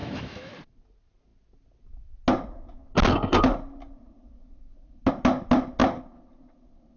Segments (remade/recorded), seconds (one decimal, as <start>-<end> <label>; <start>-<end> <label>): 0.0-0.5 remade; 0.5-7.0 recorded